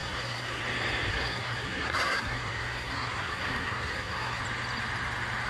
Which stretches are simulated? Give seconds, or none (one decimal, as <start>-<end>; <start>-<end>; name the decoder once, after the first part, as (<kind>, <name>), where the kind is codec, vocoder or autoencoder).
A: 0.0-0.6 (codec, SNAC); 1.1-4.4